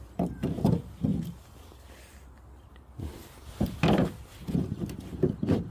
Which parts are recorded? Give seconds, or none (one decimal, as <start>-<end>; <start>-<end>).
1.1-4.5